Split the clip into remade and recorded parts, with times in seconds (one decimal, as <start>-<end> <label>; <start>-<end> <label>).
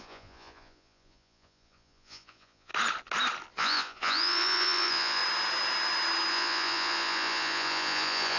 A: 0.0-2.7 remade; 2.7-3.5 recorded; 3.5-5.2 remade; 5.2-6.3 recorded; 6.3-8.4 remade